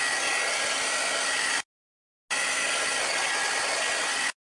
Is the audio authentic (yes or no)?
yes